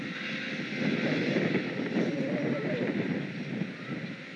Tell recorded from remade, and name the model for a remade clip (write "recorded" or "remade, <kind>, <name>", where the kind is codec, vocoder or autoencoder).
recorded